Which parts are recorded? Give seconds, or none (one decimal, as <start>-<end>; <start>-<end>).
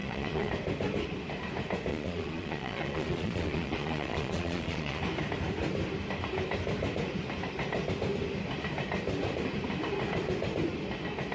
0.5-1.9; 5.0-11.3